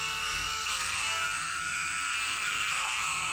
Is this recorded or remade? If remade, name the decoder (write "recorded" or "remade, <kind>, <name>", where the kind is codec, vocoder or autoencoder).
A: remade, codec, SNAC